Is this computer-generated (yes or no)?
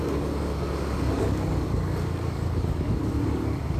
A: yes